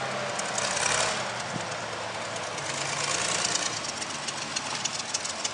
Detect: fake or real real